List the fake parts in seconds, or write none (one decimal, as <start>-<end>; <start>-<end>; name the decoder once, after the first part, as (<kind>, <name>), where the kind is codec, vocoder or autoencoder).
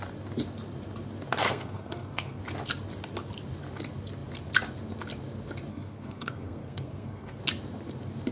1.4-2.4 (codec, SNAC); 5.7-7.4